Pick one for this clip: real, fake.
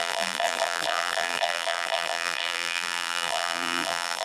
fake